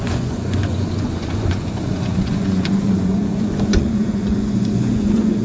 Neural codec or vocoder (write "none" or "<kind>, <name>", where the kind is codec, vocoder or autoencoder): vocoder, Vocos